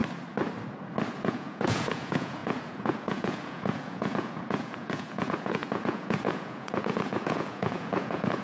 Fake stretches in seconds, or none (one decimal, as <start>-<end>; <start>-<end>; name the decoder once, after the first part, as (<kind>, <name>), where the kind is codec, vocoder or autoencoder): 1.2-8.4 (vocoder, Vocos)